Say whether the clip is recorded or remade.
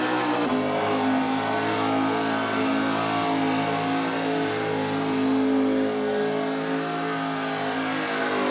recorded